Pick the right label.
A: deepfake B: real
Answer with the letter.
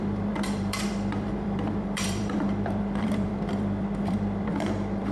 A